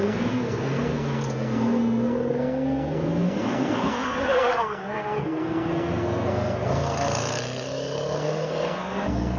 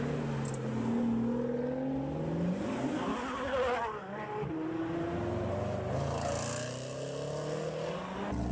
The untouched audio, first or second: second